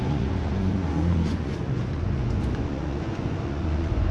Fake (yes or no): yes